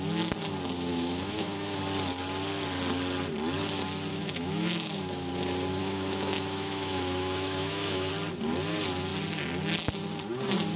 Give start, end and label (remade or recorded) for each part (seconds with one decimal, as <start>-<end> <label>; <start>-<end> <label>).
0.0-0.9 recorded; 0.9-1.8 remade; 1.8-4.1 recorded; 4.1-5.3 remade; 5.3-5.8 recorded; 5.8-8.1 remade; 8.1-10.8 recorded